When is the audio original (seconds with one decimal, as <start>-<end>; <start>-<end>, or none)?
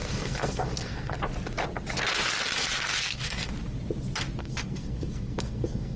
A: 1.2-2.9; 3.5-4.4